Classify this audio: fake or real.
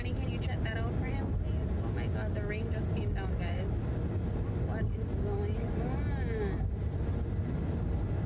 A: real